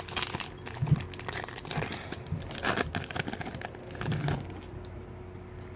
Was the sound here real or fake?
real